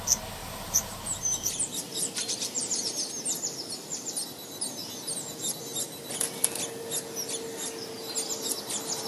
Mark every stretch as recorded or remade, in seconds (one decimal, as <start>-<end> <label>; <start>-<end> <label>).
0.0-0.4 recorded; 0.4-3.1 remade; 3.1-9.1 recorded